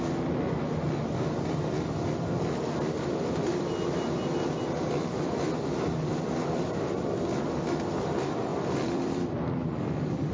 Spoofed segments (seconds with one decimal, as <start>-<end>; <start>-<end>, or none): 8.5-10.3